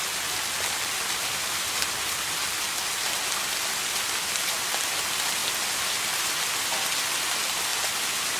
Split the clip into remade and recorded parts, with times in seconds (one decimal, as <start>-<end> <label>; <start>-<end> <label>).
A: 0.0-8.4 recorded